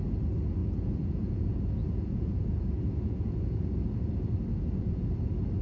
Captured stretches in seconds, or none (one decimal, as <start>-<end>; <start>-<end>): 0.0-0.6; 3.7-4.5; 5.1-5.6

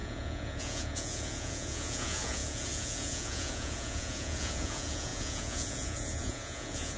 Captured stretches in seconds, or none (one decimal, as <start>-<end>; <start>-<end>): none